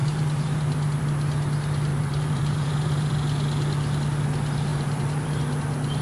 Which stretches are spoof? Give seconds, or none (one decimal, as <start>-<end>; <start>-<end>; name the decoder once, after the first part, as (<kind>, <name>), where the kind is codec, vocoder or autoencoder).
0.0-1.0 (vocoder, BigVGAN v2); 1.9-3.1; 4.7-5.4